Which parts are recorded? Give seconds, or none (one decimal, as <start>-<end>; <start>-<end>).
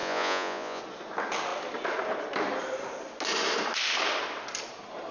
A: 0.8-5.1